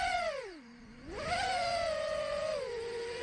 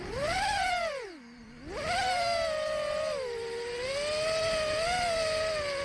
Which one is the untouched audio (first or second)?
second